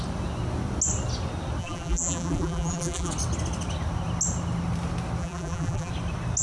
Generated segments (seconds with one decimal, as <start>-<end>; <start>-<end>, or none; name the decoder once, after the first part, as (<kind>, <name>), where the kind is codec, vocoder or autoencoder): 1.6-3.1 (vocoder, BigVGAN v2); 5.2-5.9